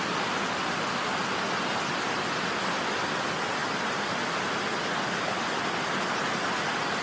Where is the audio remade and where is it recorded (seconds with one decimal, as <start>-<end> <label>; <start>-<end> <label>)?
0.0-7.0 recorded